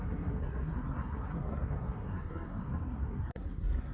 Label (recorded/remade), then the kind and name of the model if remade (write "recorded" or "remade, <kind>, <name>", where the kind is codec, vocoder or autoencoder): remade, codec, SNAC